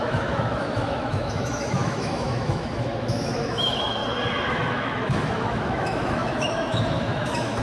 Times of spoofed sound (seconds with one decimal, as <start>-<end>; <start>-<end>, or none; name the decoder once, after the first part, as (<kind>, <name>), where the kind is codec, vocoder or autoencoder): 0.0-4.0 (autoencoder, DAC-VAE); 4.5-7.6

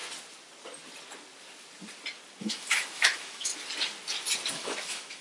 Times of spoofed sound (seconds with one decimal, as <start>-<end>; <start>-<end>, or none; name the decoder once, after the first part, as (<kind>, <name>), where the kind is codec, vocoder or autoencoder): 2.4-3.5 (autoencoder, DAC-VAE); 4.5-5.2